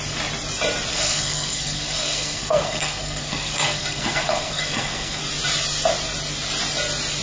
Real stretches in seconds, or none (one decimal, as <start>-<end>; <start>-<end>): 0.0-0.9; 5.2-7.2